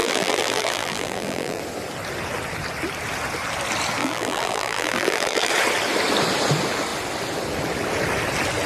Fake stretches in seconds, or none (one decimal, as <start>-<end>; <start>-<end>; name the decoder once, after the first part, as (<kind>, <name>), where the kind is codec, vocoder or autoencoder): 0.0-1.6 (vocoder, BigVGAN v2); 4.0-5.5